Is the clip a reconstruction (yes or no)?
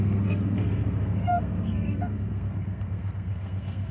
yes